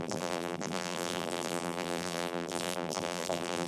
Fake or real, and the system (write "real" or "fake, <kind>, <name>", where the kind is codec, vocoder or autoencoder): fake, vocoder, BigVGAN v2